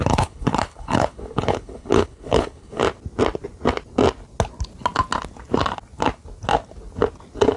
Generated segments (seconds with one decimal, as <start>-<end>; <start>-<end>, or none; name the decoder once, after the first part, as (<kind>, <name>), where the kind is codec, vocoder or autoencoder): 0.0-2.8 (codec, HILCodec)